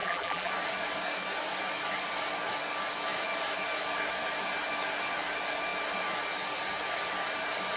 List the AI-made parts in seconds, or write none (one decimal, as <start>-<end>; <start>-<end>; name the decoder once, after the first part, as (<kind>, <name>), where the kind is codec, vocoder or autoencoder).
0.0-0.5 (vocoder, BigVGAN v2)